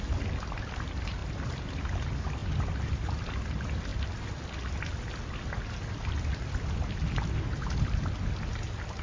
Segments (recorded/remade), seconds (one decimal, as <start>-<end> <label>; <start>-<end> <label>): 0.0-9.0 recorded